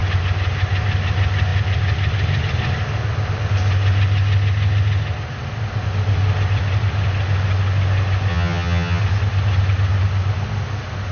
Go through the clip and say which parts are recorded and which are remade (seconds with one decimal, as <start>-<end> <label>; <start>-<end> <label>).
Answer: 0.0-8.3 recorded; 8.3-9.0 remade; 9.0-11.1 recorded